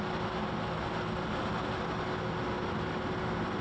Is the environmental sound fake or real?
real